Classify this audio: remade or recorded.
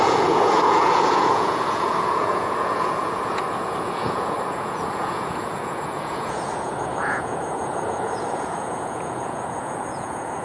remade